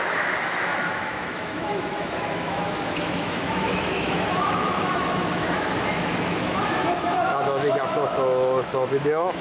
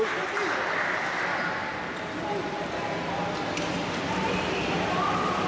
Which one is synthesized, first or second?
first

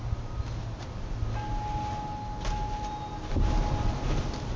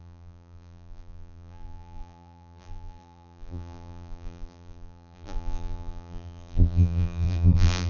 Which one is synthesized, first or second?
second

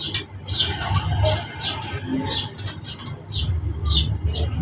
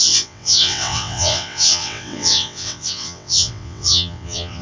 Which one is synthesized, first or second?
second